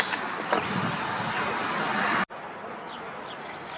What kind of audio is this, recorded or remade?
recorded